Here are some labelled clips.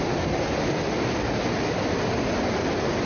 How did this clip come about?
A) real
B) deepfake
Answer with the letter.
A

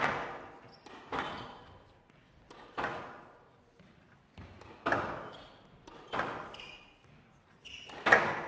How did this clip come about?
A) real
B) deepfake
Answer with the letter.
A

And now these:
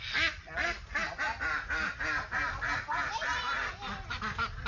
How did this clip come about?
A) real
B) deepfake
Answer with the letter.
A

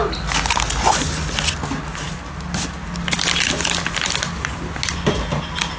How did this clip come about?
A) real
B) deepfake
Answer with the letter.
A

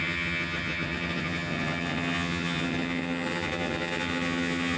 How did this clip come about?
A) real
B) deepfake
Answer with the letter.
B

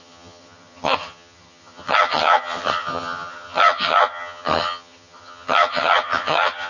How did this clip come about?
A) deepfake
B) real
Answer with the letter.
A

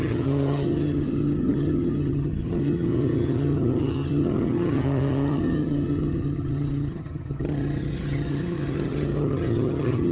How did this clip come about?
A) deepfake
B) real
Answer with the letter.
A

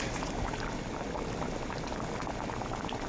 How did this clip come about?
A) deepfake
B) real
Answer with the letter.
B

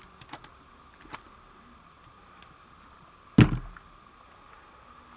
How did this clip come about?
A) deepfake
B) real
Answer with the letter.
B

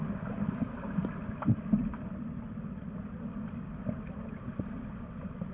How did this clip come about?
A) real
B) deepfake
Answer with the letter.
A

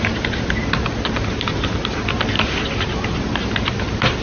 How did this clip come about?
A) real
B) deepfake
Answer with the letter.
A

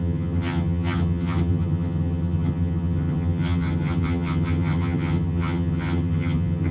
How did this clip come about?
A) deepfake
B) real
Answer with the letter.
A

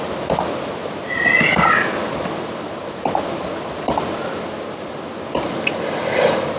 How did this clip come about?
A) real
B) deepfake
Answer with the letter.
A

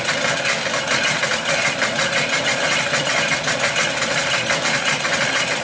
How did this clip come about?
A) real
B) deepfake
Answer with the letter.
A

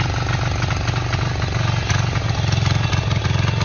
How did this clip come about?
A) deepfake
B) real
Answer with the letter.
B